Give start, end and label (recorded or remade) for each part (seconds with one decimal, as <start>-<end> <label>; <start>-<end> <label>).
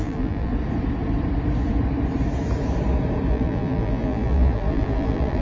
0.0-0.5 remade; 0.5-3.3 recorded; 3.3-5.4 remade